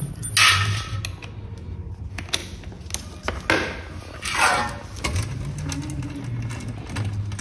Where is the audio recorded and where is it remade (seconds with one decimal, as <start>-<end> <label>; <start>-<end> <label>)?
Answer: 0.0-7.4 recorded